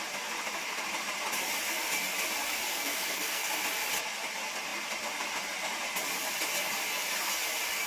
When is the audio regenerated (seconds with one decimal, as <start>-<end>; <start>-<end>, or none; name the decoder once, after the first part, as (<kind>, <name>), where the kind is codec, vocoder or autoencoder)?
2.7-3.5 (codec, SNAC)